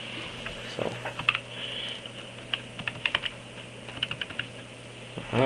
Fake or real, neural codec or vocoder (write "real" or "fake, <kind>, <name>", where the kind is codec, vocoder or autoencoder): real